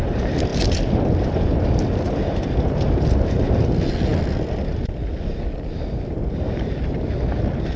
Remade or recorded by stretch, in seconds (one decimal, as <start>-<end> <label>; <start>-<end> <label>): 0.0-7.8 recorded